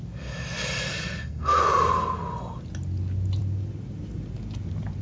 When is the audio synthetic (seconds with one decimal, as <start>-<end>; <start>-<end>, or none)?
0.9-1.6